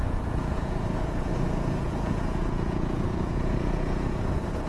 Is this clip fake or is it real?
fake